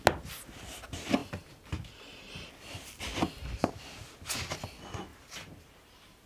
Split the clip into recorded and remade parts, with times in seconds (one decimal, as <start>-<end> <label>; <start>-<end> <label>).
0.0-6.3 recorded